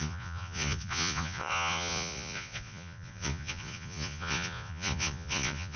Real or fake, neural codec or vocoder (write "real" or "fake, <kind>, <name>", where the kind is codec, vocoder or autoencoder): fake, vocoder, Vocos